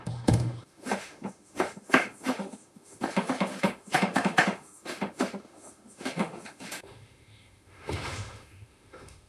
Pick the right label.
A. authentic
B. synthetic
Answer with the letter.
B